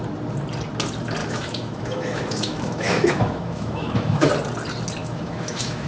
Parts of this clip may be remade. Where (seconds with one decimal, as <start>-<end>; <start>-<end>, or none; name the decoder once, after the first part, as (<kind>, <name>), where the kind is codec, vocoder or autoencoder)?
1.2-4.3 (autoencoder, DAC-VAE); 5.0-5.9